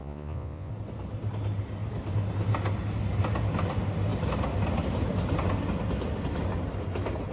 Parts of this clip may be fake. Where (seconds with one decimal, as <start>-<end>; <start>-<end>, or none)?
0.0-0.7